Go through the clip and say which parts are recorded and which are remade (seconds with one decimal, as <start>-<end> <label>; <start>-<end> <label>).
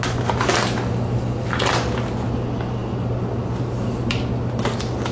0.0-5.1 recorded